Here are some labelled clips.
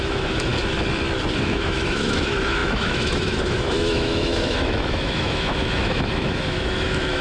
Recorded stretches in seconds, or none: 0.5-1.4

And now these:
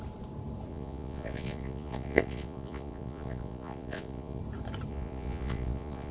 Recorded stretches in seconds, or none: 0.0-0.7; 4.4-4.9